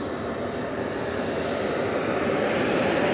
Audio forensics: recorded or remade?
recorded